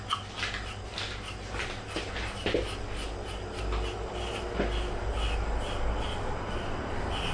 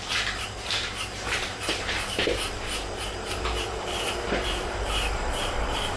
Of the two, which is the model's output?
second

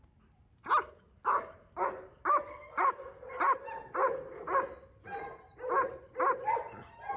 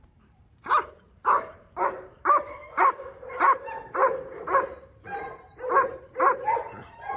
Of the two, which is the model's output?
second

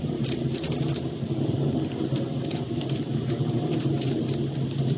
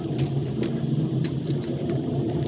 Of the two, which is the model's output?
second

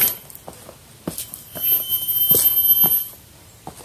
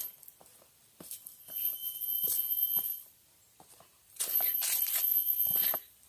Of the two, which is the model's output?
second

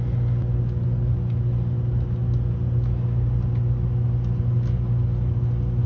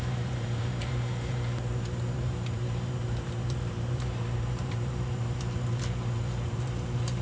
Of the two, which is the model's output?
second